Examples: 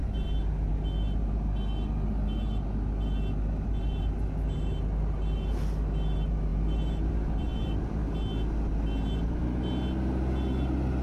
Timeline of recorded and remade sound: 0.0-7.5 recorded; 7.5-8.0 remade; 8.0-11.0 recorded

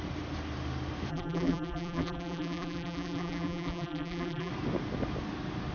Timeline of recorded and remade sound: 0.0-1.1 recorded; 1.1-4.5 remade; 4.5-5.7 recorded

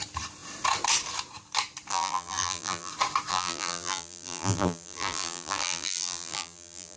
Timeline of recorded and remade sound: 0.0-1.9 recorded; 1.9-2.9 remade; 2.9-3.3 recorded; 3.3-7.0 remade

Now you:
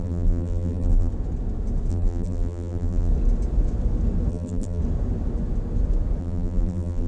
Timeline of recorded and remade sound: 0.0-1.1 remade; 1.1-1.9 recorded; 1.9-3.1 remade; 3.1-4.3 recorded; 4.3-4.8 remade; 4.8-6.2 recorded; 6.2-7.1 remade

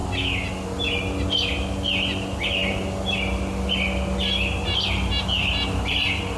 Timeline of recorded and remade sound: 0.0-1.0 recorded; 1.0-6.4 remade

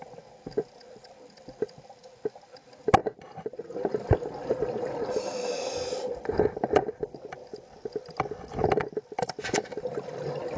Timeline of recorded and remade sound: 0.0-10.6 recorded

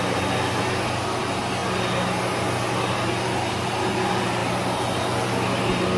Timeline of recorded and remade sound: 0.0-6.0 recorded

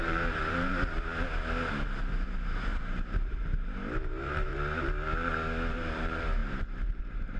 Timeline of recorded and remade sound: 0.0-1.1 remade; 1.1-2.0 recorded; 2.0-4.5 remade; 4.5-5.7 recorded; 5.7-7.4 remade